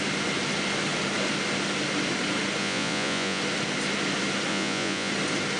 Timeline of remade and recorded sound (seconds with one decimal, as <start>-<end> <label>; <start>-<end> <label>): 0.0-2.6 recorded; 2.6-3.4 remade; 3.4-4.5 recorded; 4.5-5.1 remade; 5.1-5.6 recorded